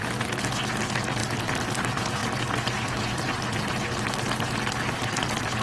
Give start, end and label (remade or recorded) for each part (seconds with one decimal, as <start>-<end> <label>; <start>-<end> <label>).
0.0-5.6 recorded